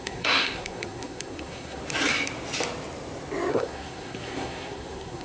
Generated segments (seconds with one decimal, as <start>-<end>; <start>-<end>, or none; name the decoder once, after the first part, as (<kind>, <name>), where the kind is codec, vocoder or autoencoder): 0.0-1.8 (codec, SNAC); 3.5-5.2